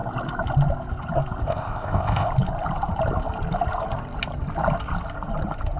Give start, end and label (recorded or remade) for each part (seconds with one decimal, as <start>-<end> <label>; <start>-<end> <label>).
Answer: 0.0-1.5 recorded; 1.5-2.3 remade; 2.3-5.8 recorded